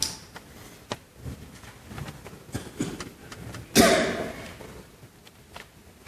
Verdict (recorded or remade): recorded